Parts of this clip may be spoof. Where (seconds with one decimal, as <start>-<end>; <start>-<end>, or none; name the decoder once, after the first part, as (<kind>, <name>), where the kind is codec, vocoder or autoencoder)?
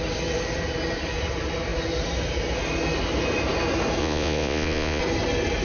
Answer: 4.0-5.0 (vocoder, Vocos)